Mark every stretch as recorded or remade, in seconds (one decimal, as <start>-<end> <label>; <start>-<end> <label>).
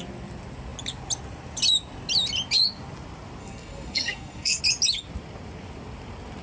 0.0-3.4 recorded; 3.4-4.6 remade; 4.6-6.4 recorded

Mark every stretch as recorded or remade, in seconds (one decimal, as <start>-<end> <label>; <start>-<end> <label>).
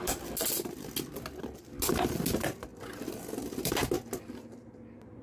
0.0-2.7 recorded; 2.7-3.7 remade; 3.7-5.2 recorded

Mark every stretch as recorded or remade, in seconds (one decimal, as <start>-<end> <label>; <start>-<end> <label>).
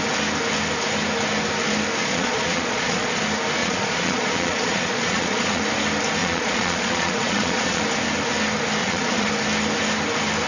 0.0-2.0 recorded; 2.0-3.2 remade; 3.2-3.6 recorded; 3.6-5.6 remade; 5.6-6.2 recorded; 6.2-7.8 remade; 7.8-8.8 recorded; 8.8-9.3 remade; 9.3-10.5 recorded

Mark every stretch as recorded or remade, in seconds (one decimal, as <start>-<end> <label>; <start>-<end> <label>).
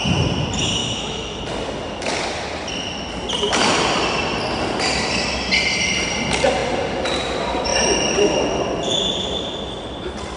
0.0-0.8 recorded; 0.8-1.4 remade; 1.4-10.4 recorded